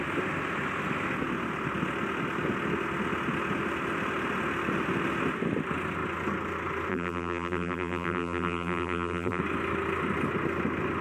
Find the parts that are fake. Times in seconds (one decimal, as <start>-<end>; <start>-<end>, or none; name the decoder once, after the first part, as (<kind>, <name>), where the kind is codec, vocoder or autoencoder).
6.9-9.4 (vocoder, BigVGAN v2)